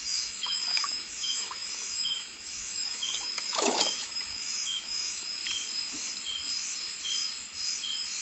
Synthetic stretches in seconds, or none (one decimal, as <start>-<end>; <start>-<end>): 0.0-5.4